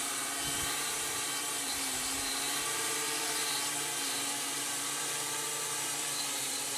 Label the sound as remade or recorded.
remade